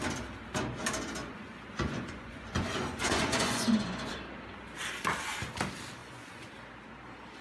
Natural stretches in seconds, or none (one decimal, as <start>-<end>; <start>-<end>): 0.0-1.2; 4.1-6.0; 6.5-7.4